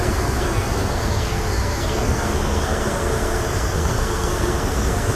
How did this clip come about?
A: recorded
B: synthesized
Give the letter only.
B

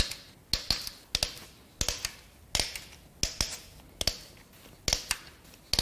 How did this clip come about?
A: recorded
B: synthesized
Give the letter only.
A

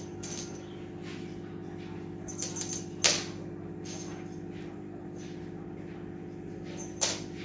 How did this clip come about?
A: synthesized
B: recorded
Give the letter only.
B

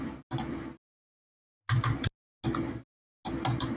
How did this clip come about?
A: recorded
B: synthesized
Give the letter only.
A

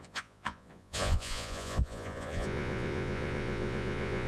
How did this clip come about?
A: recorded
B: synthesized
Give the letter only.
B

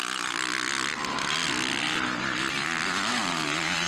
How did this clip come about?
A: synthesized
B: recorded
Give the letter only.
B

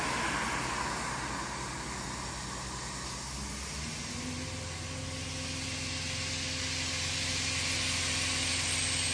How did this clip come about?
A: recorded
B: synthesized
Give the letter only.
A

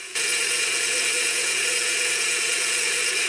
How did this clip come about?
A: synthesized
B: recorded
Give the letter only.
A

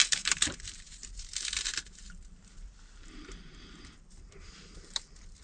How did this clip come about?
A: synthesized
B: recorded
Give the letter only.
A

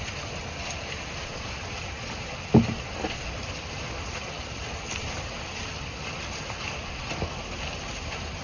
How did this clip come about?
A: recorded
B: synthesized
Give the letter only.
A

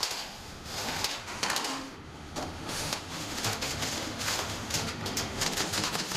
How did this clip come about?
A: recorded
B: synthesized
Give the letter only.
B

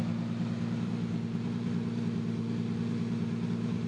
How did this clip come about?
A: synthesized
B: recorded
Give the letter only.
B